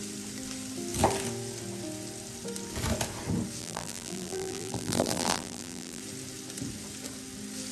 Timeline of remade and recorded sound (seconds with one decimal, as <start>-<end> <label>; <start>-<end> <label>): 0.0-3.6 recorded; 3.6-6.0 remade; 6.0-7.7 recorded